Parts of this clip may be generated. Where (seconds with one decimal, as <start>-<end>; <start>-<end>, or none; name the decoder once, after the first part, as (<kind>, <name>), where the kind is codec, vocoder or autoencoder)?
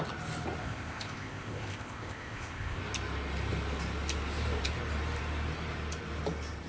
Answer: 0.6-2.8 (codec, ZipCodec)